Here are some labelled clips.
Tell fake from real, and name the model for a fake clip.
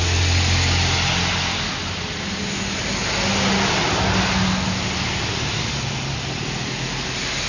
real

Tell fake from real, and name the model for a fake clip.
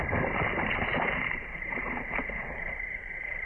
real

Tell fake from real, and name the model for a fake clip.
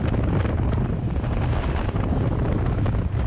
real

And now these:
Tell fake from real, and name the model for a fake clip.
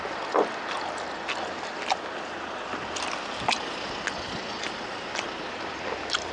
real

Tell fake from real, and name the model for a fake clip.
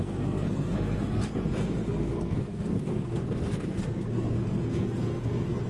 fake, codec, SNAC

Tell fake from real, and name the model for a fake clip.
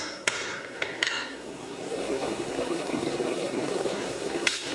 fake, codec, SNAC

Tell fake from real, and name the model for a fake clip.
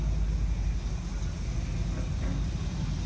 real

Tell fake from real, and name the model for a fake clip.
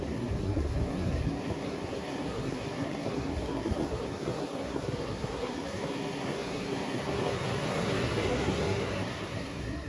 fake, codec, SNAC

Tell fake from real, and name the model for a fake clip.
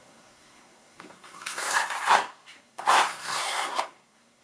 fake, codec, SNAC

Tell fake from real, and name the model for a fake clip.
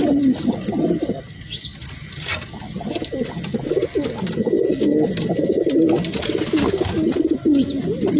real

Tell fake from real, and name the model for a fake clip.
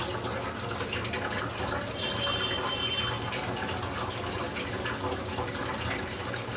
real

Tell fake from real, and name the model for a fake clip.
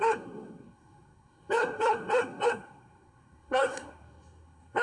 fake, codec, SNAC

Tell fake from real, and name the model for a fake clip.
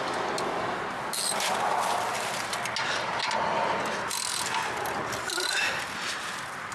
real